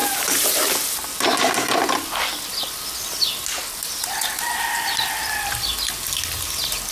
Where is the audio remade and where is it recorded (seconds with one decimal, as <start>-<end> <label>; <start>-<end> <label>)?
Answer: 0.0-0.7 remade; 0.7-6.9 recorded